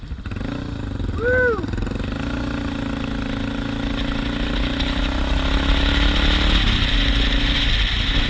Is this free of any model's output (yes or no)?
yes